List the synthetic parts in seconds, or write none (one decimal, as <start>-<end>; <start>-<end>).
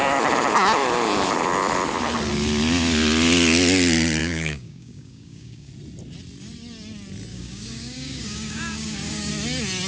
4.2-5.7; 7.3-9.3